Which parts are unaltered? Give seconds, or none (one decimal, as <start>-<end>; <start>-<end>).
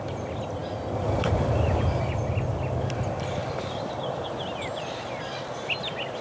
none